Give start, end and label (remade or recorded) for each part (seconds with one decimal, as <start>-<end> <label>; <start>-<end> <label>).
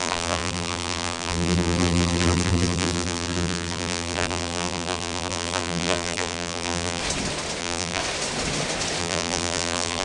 0.0-7.0 remade; 7.0-7.6 recorded; 7.6-8.0 remade; 8.0-9.0 recorded; 9.0-10.0 remade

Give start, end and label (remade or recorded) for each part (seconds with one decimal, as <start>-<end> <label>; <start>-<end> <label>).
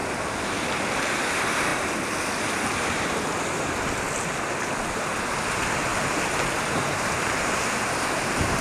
0.0-5.9 recorded; 5.9-8.6 remade